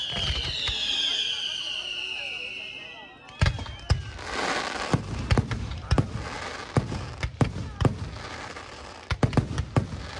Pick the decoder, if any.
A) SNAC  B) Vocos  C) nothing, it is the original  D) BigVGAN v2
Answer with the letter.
C